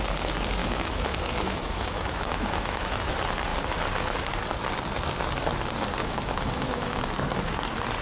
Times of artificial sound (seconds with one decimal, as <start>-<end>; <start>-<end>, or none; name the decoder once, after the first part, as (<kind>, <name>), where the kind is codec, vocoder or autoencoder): 0.6-3.1 (autoencoder, DAC-VAE); 6.0-7.0

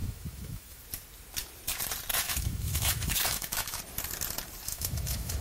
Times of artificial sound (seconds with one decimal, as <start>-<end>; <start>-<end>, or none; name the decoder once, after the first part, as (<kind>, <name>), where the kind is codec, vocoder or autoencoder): 0.0-0.8 (autoencoder, DAC-VAE); 2.1-3.8; 4.7-5.4